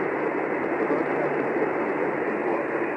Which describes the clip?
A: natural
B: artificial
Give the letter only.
A